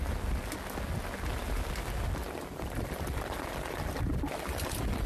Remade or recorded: recorded